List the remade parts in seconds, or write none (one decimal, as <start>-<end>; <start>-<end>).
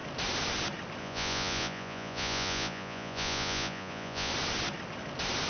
1.0-4.3